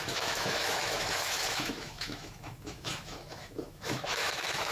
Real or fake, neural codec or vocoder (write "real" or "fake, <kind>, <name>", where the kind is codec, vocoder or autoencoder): fake, autoencoder, DAC-VAE